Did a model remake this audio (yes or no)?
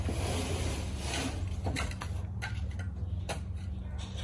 no